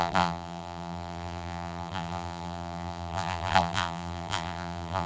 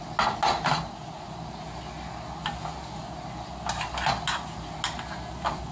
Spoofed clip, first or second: first